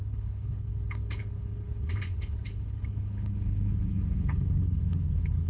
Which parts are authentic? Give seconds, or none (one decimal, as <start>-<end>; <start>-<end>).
none

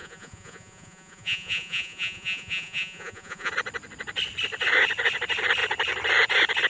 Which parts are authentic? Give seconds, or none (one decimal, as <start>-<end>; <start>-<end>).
3.5-6.7

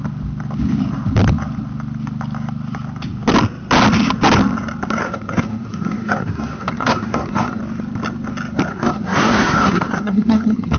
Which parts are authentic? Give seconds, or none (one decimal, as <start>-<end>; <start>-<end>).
0.0-5.0; 7.6-8.7